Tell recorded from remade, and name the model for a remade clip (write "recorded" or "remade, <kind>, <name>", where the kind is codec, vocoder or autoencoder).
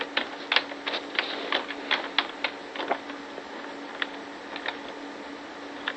recorded